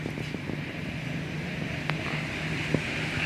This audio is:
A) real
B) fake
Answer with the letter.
A